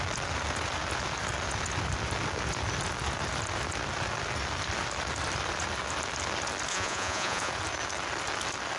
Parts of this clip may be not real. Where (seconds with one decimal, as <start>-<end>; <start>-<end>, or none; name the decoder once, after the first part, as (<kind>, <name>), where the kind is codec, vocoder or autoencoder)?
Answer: 6.7-7.5 (vocoder, Vocos)